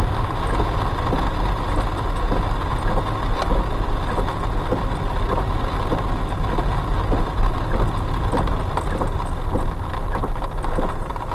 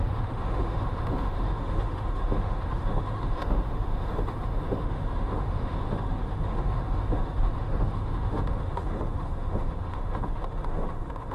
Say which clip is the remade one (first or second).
second